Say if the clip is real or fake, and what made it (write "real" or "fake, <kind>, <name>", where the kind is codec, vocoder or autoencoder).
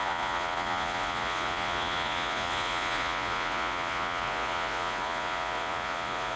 fake, vocoder, Vocos